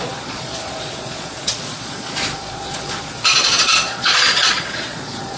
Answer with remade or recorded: remade